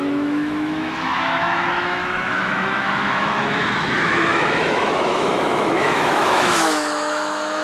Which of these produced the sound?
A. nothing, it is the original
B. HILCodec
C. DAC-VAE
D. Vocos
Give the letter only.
C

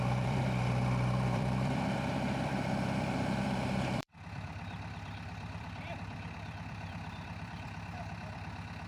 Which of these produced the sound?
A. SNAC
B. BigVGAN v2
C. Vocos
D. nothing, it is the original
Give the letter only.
B